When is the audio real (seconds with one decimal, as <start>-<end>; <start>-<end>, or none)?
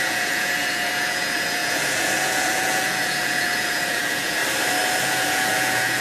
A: 4.4-5.0